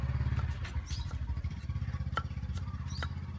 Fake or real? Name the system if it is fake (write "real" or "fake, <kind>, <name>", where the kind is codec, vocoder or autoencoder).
fake, vocoder, BigVGAN v2